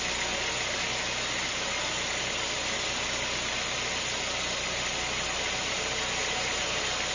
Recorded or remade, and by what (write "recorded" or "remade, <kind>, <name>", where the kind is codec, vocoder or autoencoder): recorded